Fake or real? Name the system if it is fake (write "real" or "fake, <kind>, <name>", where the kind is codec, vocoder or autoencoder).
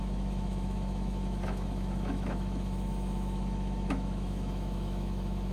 fake, autoencoder, DAC-VAE